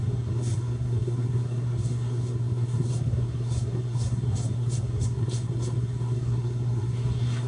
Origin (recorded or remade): remade